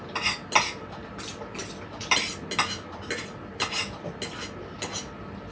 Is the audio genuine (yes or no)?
yes